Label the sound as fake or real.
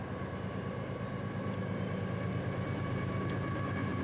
real